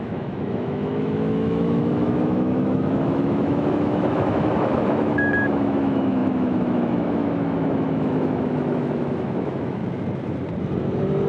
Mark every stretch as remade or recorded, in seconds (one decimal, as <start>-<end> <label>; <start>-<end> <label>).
0.0-9.8 remade; 9.8-11.3 recorded